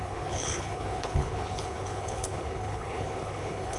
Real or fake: fake